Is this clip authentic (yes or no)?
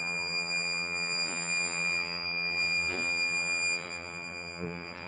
no